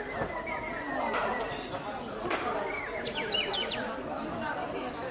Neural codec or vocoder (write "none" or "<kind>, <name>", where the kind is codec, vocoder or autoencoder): none